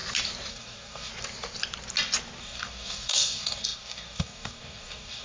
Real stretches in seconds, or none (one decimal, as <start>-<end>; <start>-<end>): 0.0-0.5; 1.1-2.4